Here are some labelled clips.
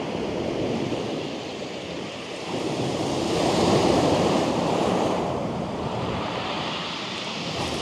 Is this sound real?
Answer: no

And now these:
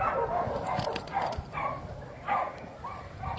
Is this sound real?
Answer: yes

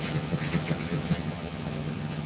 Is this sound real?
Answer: no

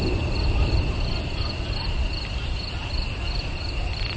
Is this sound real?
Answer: yes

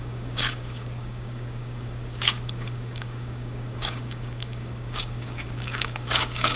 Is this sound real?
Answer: no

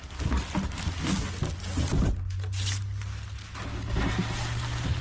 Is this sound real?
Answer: yes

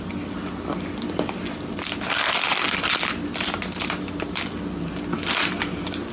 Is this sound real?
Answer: yes